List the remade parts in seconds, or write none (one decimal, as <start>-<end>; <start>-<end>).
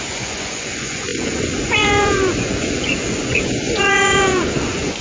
0.0-5.0